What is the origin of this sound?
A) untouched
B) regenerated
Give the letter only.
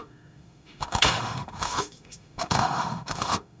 B